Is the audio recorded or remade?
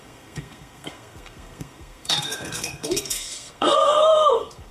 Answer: remade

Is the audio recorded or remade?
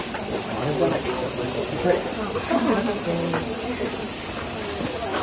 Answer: recorded